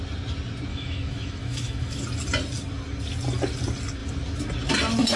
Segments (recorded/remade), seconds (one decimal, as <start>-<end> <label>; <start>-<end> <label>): 0.0-0.7 recorded; 0.7-2.0 remade; 2.0-5.2 recorded